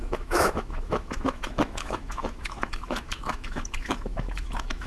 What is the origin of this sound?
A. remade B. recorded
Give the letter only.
A